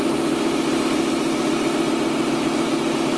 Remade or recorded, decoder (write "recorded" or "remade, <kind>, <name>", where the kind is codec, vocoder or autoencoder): recorded